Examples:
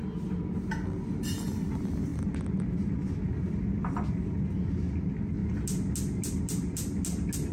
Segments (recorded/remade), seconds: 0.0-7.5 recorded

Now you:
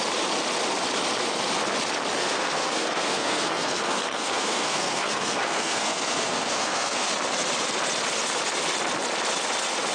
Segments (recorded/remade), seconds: 0.0-2.2 recorded; 2.2-7.1 remade; 7.1-9.9 recorded

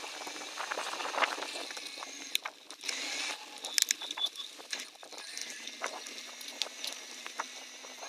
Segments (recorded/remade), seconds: 0.0-8.1 recorded

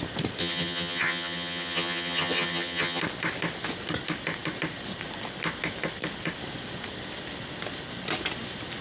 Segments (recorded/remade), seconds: 0.0-0.4 recorded; 0.4-3.0 remade; 3.0-8.8 recorded

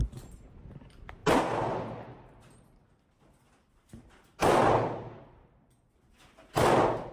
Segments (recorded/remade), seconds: 0.0-7.1 recorded

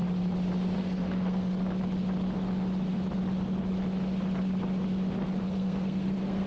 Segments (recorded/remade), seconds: 0.0-0.8 recorded; 0.8-1.5 remade; 1.5-5.4 recorded; 5.4-6.5 remade

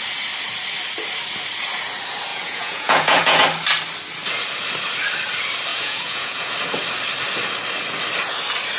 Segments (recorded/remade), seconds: 0.0-2.3 recorded; 2.3-3.4 remade; 3.4-5.7 recorded; 5.7-6.5 remade; 6.5-8.8 recorded